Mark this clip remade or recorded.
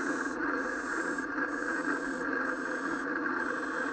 remade